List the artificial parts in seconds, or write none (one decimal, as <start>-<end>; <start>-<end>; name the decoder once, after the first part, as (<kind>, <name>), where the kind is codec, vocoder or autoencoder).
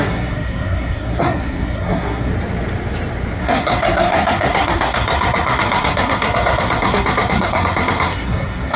0.0-2.3 (codec, SNAC); 3.4-8.8